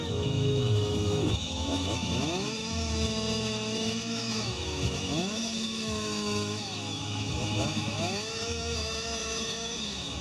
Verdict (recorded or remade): remade